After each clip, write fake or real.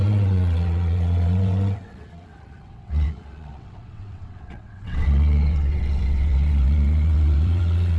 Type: fake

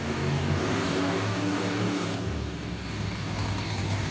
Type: fake